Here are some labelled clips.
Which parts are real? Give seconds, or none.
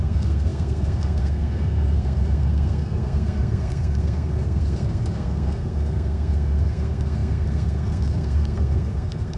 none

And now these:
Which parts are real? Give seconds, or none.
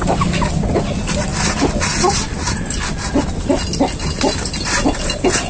0.0-5.5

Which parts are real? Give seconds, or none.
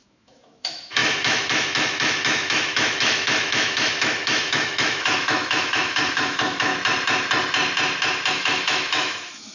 6.7-8.3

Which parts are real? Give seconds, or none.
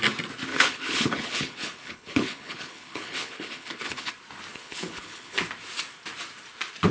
0.0-0.5; 4.1-4.5; 5.4-6.9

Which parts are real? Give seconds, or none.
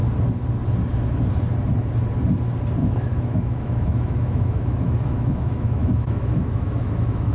0.0-2.8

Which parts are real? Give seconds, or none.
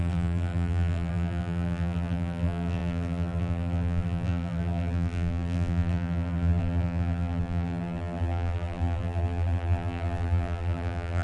none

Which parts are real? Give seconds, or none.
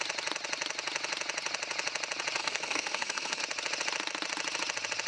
0.0-2.4; 3.4-5.1